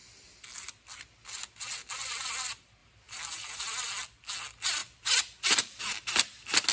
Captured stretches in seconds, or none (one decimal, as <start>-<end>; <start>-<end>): 0.0-2.8; 3.6-4.8; 6.1-6.7